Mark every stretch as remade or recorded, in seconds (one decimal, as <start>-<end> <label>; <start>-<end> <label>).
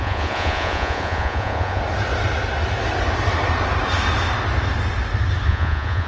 0.0-1.8 remade; 1.8-5.5 recorded; 5.5-6.1 remade